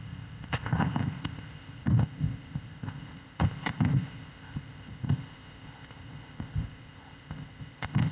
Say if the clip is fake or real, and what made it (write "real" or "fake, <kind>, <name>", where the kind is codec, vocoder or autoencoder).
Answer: fake, codec, ZipCodec